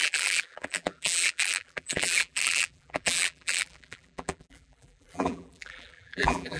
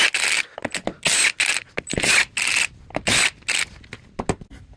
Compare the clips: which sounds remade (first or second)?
first